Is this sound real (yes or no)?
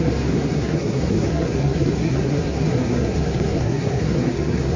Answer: no